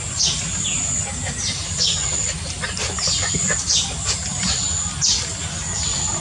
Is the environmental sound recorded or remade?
recorded